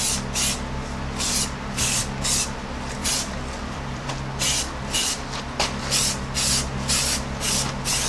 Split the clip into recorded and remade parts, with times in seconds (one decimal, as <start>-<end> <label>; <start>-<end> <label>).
0.0-3.0 recorded; 3.0-4.1 remade; 4.1-8.1 recorded